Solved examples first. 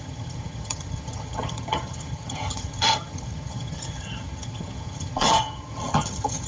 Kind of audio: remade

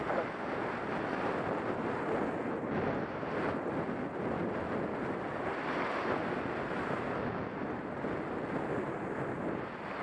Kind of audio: recorded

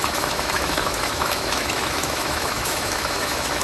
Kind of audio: remade